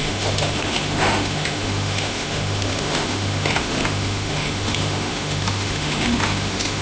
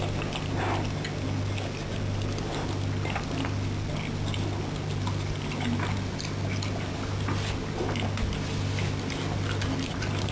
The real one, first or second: second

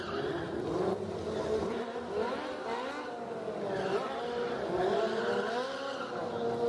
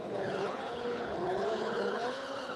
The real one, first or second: first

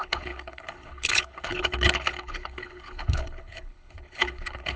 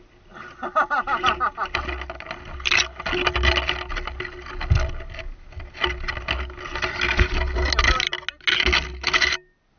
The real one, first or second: second